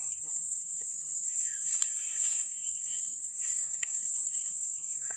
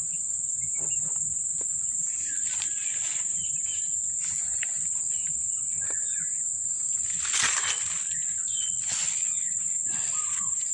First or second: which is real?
second